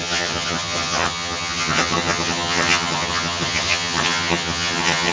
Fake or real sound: fake